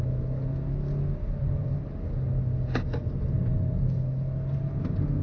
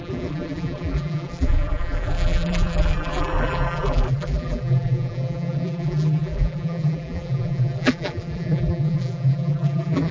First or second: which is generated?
second